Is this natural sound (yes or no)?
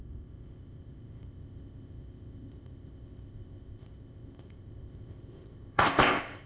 no